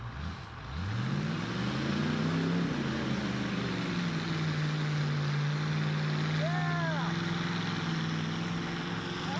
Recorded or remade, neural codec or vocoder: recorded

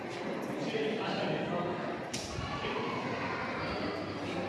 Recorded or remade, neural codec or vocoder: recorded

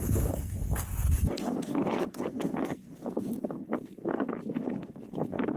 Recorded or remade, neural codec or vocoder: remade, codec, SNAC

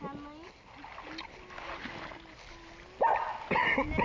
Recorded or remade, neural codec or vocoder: recorded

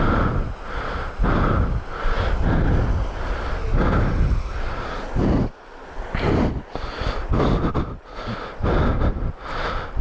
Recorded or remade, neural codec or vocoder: recorded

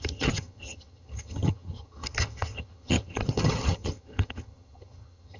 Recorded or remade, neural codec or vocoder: remade, vocoder, HiFi-GAN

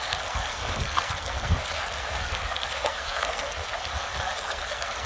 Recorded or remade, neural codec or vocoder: remade, codec, SNAC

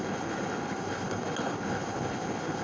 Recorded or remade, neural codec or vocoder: remade, codec, HILCodec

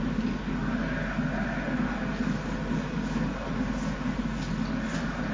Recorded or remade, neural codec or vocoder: recorded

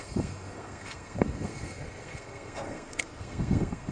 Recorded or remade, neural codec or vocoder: remade, codec, SNAC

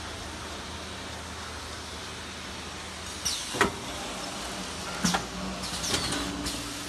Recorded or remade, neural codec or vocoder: recorded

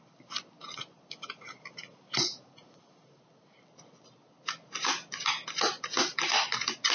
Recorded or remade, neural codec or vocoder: recorded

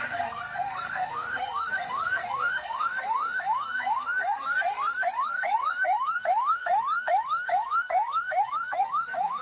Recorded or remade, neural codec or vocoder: remade, codec, SNAC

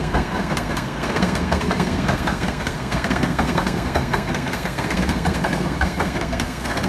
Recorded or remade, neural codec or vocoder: remade, codec, SNAC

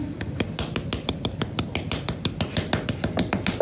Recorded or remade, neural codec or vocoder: recorded